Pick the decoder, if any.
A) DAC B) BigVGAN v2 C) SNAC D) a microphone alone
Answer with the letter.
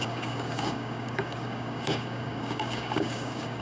A